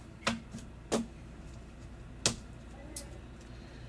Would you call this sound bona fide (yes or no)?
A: yes